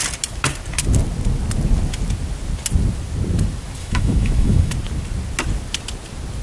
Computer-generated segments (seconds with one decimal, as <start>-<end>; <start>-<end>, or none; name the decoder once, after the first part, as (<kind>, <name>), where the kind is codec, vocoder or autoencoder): 3.8-4.7 (autoencoder, DAC-VAE)